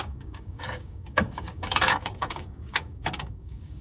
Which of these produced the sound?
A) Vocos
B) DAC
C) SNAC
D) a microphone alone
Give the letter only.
B